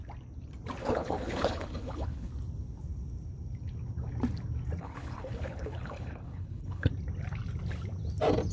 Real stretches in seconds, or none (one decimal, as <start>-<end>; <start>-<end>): 0.0-0.8; 2.3-4.8; 6.9-8.5